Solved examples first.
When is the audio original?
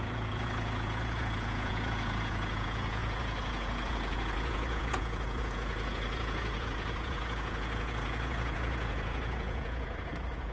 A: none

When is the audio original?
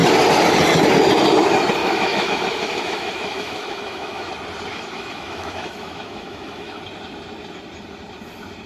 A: 0.0-1.8; 4.3-4.7; 6.8-8.7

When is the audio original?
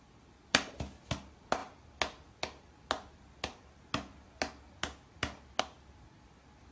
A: 0.0-6.7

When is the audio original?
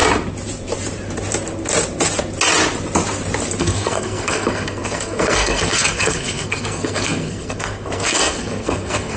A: 0.0-3.6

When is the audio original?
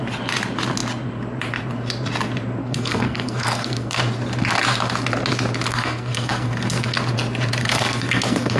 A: 0.0-2.6; 4.0-5.7; 7.0-7.6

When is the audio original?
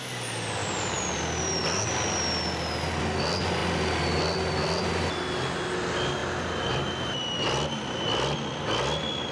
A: 0.0-9.3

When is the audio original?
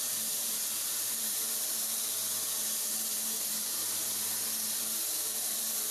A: none